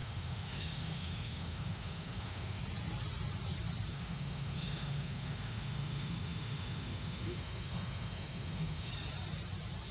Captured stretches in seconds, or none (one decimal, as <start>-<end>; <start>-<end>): 2.6-3.9; 8.9-9.9